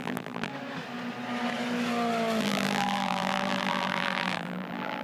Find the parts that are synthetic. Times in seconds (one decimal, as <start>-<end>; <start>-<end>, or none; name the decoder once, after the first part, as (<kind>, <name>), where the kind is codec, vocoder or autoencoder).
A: 0.0-0.5 (vocoder, BigVGAN v2); 2.4-5.0